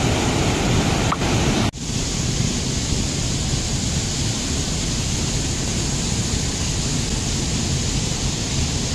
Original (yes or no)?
yes